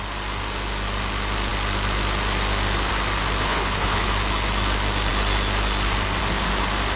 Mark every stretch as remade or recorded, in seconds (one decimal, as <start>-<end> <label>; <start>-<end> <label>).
0.0-3.4 recorded; 3.4-4.1 remade; 4.1-7.0 recorded

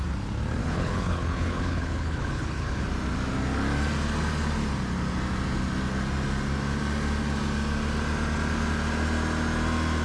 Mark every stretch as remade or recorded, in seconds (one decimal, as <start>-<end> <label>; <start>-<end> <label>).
0.0-0.6 recorded; 0.6-2.8 remade; 2.8-10.0 recorded

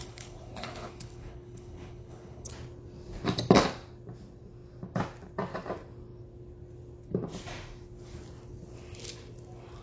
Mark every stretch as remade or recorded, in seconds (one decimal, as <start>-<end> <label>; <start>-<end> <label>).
0.0-2.5 remade; 2.5-9.8 recorded

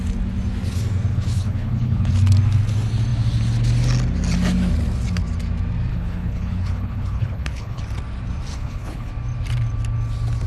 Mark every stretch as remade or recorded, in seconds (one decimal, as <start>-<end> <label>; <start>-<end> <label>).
0.0-1.1 recorded; 1.1-2.1 remade; 2.1-5.9 recorded; 5.9-7.8 remade; 7.8-8.5 recorded; 8.5-9.1 remade; 9.1-10.5 recorded